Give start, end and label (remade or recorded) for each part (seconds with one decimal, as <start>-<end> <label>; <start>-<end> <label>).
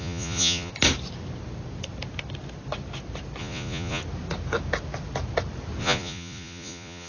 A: 0.0-0.7 remade; 0.7-3.4 recorded; 3.4-4.0 remade; 4.0-5.8 recorded; 5.8-7.1 remade